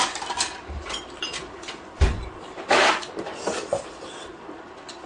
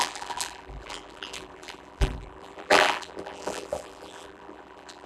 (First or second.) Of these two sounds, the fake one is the second